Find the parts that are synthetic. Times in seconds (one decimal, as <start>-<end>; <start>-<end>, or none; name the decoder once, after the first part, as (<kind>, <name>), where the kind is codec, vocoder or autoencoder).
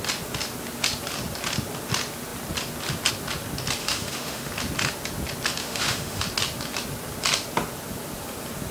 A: 3.8-4.5 (autoencoder, DAC-VAE); 5.6-6.2